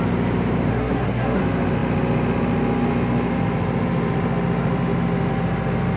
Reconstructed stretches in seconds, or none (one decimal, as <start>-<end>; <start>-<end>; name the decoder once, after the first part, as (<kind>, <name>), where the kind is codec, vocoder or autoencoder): 0.7-1.4 (codec, SNAC)